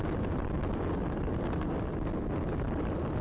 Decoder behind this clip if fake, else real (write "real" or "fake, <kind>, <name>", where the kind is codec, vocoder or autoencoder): real